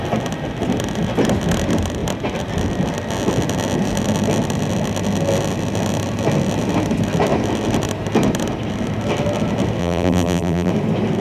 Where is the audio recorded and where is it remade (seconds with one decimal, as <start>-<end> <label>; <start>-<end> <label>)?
0.0-9.8 recorded; 9.8-10.7 remade; 10.7-11.2 recorded